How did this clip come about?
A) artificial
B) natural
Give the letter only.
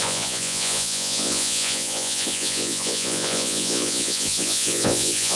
A